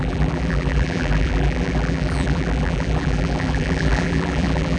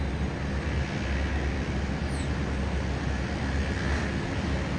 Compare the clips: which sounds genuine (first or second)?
second